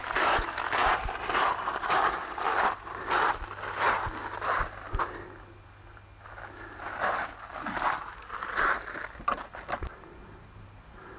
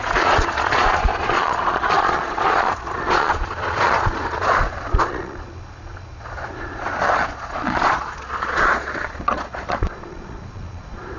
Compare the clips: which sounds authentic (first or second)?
first